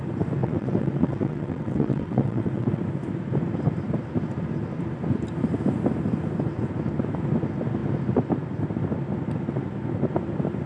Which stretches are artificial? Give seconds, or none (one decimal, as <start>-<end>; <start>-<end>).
0.4-2.8